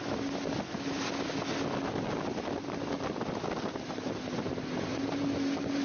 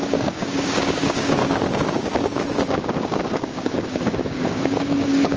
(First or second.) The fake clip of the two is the second